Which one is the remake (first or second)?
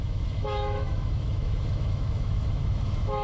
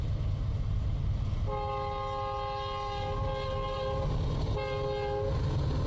first